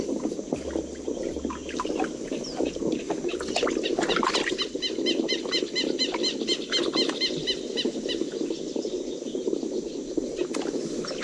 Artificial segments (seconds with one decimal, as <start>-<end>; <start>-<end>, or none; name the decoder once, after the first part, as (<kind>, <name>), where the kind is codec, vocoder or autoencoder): 1.6-3.0 (vocoder, BigVGAN v2)